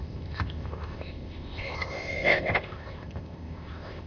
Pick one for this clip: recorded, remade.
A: remade